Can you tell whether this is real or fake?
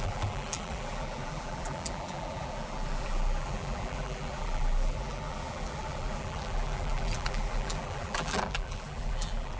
fake